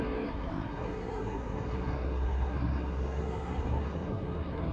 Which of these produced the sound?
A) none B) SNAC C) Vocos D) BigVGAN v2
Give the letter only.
B